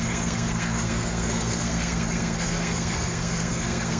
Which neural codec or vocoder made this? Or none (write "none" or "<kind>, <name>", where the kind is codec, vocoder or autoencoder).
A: codec, SNAC